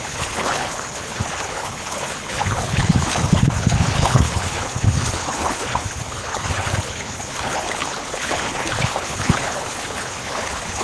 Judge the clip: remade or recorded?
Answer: remade